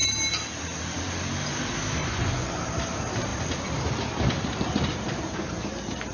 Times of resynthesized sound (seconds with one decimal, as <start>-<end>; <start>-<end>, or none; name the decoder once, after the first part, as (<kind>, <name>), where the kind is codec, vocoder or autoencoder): 2.0-2.6 (vocoder, Vocos)